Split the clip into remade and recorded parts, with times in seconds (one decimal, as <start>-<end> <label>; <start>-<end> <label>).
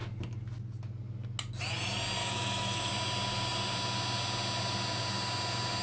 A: 0.0-2.2 recorded; 2.2-2.9 remade; 2.9-5.8 recorded